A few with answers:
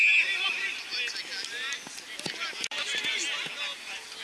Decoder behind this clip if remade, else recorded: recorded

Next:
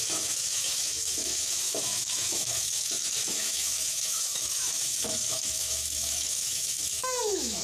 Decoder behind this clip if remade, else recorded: remade, autoencoder, DAC-VAE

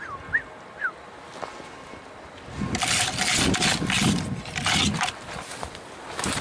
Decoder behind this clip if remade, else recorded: recorded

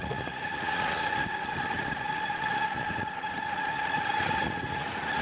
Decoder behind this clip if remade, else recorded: remade, vocoder, Vocos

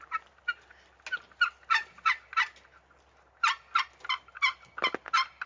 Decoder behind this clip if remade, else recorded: recorded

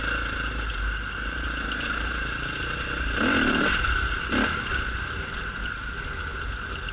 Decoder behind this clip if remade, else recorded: recorded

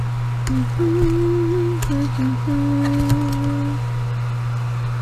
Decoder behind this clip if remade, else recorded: recorded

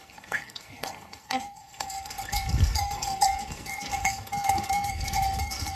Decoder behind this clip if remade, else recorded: remade, codec, SNAC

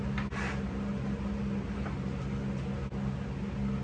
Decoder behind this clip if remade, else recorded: recorded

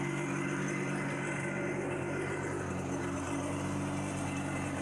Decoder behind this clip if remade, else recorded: recorded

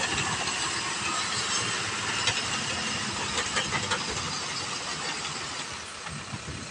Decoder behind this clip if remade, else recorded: recorded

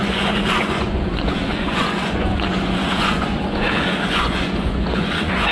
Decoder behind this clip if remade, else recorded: remade, vocoder, Vocos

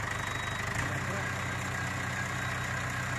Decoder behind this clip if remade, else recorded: recorded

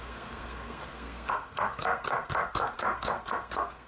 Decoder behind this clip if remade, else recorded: remade, codec, SNAC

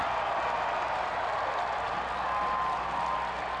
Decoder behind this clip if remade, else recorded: recorded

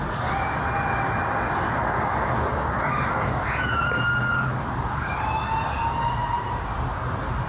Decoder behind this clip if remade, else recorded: recorded